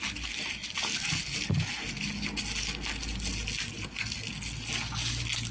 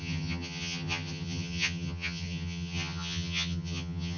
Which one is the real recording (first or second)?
first